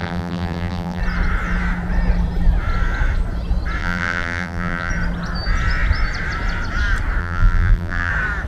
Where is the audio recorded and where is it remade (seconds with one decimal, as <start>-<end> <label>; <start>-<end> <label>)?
0.0-1.0 remade; 1.0-3.8 recorded; 3.8-4.9 remade; 4.9-7.2 recorded; 7.2-8.1 remade; 8.1-8.5 recorded